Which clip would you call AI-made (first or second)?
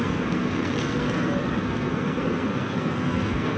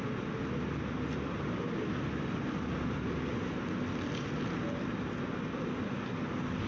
first